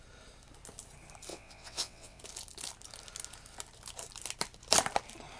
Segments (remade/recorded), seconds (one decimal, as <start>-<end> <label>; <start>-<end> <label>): 0.0-1.3 recorded; 1.3-2.2 remade; 2.2-5.4 recorded

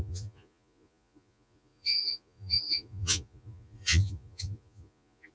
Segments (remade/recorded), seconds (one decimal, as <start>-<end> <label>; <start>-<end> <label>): 0.0-5.3 remade

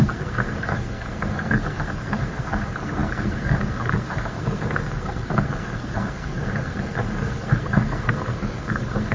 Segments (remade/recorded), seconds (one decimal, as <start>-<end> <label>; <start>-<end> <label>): 0.0-9.1 remade

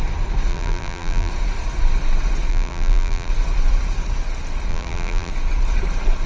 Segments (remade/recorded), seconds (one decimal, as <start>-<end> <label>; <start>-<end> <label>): 0.0-0.5 recorded; 0.5-1.3 remade; 1.3-2.5 recorded; 2.5-3.3 remade; 3.3-4.7 recorded; 4.7-5.3 remade; 5.3-6.3 recorded